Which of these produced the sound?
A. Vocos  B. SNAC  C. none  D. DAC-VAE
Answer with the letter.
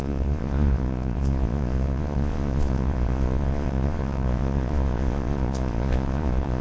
A